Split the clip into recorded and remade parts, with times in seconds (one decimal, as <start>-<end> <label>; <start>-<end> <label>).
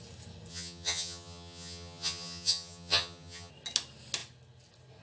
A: 0.0-0.5 recorded; 0.5-3.5 remade; 3.5-5.0 recorded